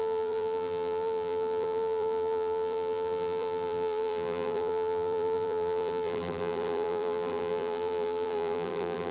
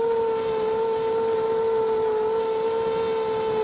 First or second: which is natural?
second